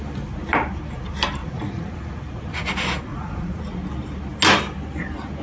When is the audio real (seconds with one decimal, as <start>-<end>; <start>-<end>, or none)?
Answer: 0.0-1.4; 2.7-3.1; 3.6-5.4